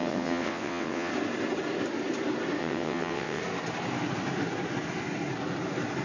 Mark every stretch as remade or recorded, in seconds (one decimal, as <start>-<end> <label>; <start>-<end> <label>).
0.0-1.1 remade; 1.1-2.6 recorded; 2.6-3.4 remade; 3.4-6.0 recorded